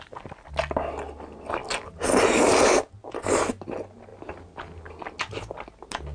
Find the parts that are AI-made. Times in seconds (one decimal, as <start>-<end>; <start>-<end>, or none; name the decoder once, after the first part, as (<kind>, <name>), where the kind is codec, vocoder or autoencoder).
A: none